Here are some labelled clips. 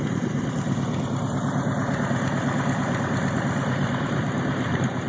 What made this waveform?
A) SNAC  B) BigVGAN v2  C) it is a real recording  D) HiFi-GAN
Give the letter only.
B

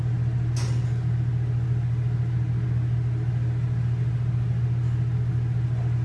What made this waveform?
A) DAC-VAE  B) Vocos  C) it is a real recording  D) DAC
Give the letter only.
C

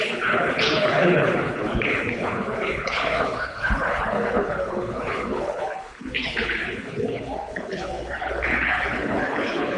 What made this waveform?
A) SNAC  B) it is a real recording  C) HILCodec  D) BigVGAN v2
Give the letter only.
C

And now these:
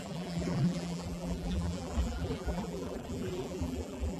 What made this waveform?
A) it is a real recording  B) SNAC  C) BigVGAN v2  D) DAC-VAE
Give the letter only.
C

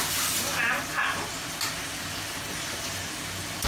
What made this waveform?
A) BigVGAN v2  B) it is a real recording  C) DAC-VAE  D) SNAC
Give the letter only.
B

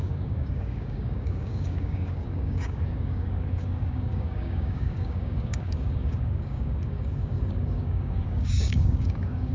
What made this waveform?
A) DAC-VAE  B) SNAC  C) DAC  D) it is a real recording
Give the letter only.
C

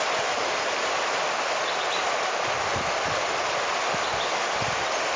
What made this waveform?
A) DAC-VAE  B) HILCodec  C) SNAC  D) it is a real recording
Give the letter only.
D